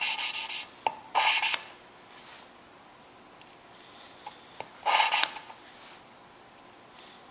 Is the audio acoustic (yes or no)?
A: yes